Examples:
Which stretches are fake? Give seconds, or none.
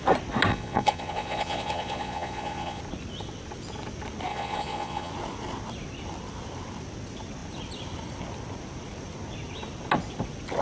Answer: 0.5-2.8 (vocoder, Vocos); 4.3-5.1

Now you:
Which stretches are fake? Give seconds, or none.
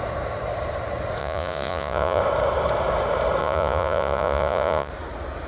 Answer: 1.2-2.2 (vocoder, Vocos); 3.4-4.9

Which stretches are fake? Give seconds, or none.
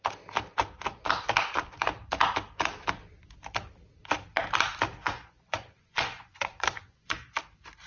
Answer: 5.0-7.3 (vocoder, Vocos)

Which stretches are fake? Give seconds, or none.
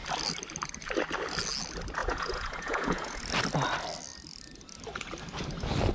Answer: 2.0-3.2 (vocoder, Vocos)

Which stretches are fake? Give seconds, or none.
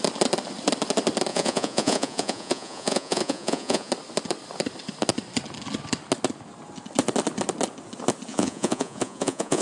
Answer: 1.3-3.9 (vocoder, Vocos); 8.3-9.6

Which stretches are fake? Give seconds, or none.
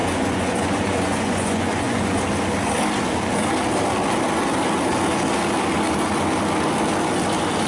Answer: 0.0-2.2 (vocoder, Vocos)